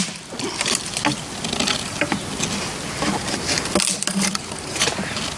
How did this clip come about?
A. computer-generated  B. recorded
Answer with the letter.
B